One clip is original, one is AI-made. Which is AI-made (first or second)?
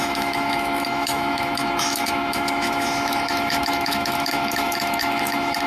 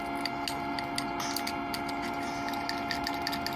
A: first